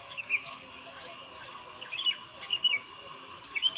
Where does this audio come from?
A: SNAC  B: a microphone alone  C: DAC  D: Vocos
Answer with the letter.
C